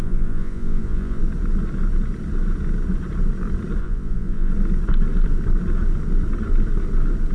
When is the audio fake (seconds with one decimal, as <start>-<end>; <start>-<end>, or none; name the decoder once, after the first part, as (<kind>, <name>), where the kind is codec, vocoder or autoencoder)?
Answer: 0.0-1.2 (vocoder, Vocos); 3.8-4.5

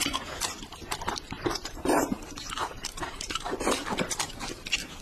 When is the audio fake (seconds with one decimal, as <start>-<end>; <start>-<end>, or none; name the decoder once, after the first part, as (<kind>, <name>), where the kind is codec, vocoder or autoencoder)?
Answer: 1.6-3.7 (vocoder, BigVGAN v2)

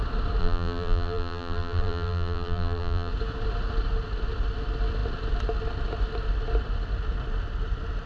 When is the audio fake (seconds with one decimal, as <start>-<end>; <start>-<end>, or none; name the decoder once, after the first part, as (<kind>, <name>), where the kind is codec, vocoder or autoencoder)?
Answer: 0.4-3.1 (vocoder, BigVGAN v2)

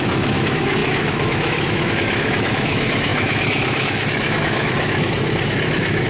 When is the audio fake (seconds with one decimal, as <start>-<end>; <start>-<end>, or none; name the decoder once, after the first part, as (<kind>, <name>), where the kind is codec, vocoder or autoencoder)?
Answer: 0.0-6.1 (autoencoder, DAC-VAE)

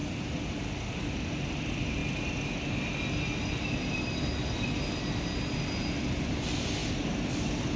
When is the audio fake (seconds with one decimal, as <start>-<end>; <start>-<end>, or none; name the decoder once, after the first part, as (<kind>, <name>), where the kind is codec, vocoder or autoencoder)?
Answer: none

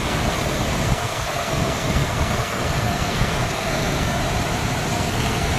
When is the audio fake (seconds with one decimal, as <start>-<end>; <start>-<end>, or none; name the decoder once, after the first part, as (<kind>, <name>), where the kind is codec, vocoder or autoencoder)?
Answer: 0.0-4.2 (codec, SNAC); 4.9-5.6

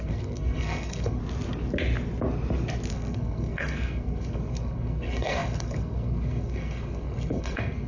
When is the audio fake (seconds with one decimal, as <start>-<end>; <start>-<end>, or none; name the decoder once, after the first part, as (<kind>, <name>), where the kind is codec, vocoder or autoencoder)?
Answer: 0.0-1.2 (codec, SNAC); 2.9-7.9